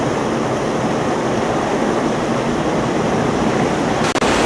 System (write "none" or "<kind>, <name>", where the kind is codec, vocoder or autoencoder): none